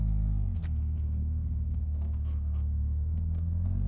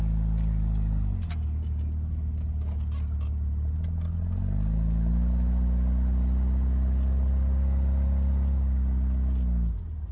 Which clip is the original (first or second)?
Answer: second